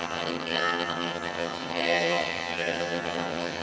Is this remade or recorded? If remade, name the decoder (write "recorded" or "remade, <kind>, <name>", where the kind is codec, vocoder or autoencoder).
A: remade, vocoder, HiFi-GAN